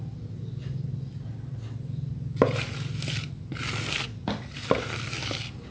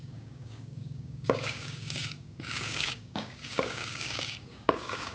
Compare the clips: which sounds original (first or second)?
first